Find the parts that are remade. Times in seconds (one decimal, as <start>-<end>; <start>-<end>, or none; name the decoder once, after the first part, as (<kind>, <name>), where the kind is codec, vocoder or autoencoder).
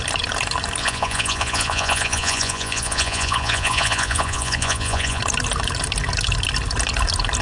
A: 0.8-5.2 (vocoder, Vocos)